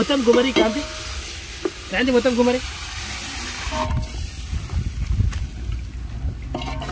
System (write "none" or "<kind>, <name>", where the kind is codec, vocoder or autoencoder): none